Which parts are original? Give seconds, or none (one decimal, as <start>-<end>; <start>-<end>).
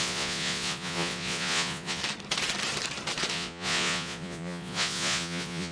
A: 2.0-3.3